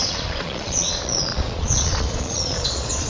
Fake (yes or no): yes